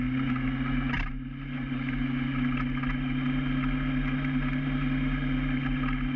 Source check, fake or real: real